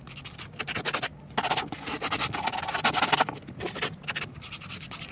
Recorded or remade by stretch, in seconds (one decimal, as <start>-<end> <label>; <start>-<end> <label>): 0.0-5.1 recorded